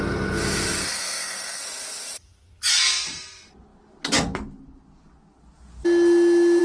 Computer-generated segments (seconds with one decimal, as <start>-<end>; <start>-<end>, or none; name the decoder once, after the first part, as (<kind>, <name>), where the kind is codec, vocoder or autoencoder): 0.8-1.6 (codec, SNAC)